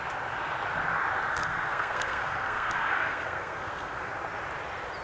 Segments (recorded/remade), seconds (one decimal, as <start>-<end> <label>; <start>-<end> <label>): 0.0-1.3 recorded; 1.3-4.1 remade; 4.1-5.0 recorded